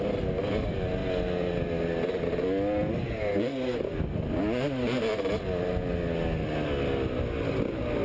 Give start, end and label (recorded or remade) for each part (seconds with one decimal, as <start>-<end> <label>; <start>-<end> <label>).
0.0-8.0 recorded